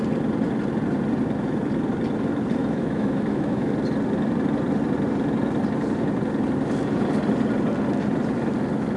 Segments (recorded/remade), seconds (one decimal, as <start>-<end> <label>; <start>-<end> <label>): 0.0-2.6 recorded; 2.6-3.7 remade; 3.7-9.0 recorded